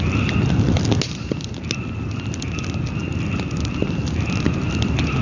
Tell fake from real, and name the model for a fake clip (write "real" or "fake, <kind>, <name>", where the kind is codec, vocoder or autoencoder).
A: real